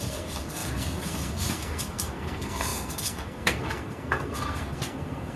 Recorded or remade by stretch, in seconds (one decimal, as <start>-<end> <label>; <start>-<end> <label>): 0.0-5.4 remade